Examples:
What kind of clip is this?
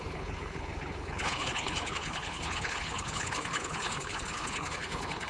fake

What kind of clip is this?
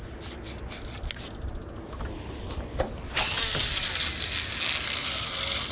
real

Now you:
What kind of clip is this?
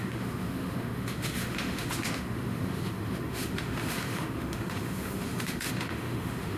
fake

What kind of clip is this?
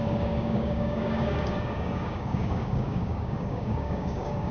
fake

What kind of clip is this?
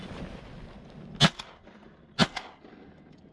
real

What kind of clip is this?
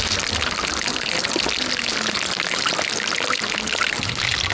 real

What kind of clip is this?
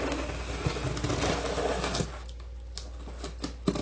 real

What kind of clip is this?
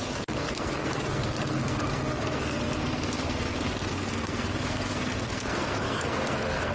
fake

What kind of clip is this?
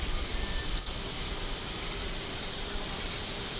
real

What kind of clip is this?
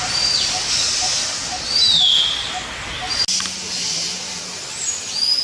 real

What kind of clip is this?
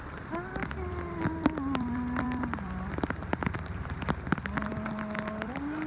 fake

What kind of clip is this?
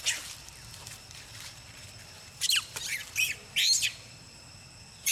fake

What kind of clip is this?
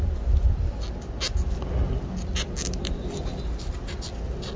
real